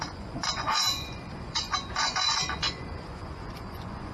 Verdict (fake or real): fake